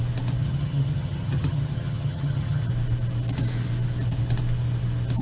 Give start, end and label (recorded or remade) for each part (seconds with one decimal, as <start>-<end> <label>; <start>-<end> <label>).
0.0-0.4 recorded; 0.4-2.7 remade; 2.7-5.2 recorded